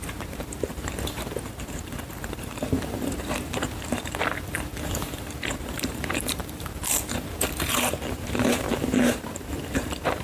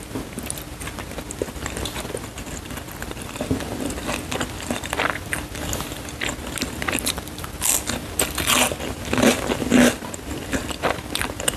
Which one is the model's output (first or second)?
first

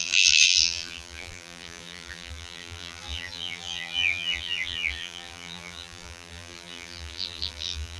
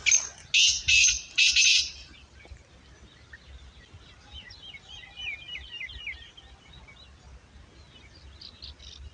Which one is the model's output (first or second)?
first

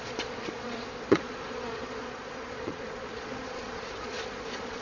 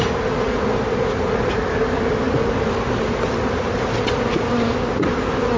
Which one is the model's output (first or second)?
first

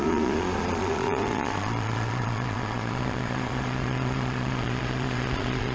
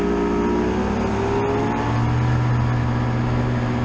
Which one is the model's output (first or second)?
first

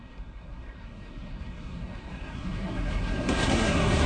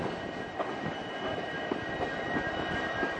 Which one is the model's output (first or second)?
first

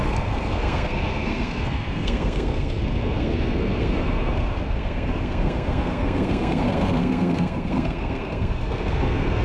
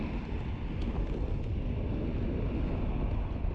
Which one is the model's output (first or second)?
first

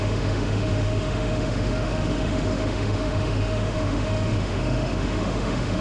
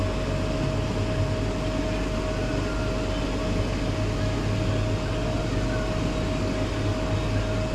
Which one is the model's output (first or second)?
first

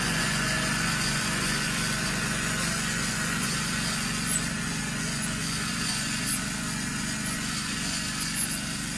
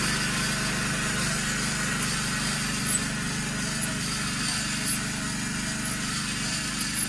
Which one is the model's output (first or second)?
first